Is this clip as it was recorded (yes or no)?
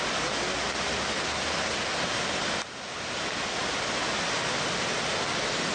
yes